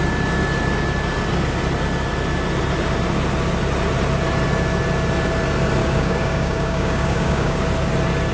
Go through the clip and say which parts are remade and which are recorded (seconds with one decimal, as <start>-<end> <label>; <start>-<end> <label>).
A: 0.0-5.8 recorded; 5.8-7.6 remade; 7.6-8.3 recorded